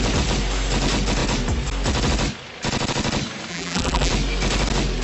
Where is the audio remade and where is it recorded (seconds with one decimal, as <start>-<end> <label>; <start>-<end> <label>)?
0.0-3.5 recorded; 3.5-4.1 remade; 4.1-5.0 recorded